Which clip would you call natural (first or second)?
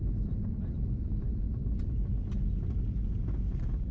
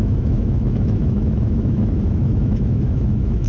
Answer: first